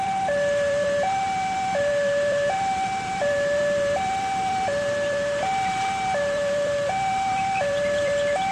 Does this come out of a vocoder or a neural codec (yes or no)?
yes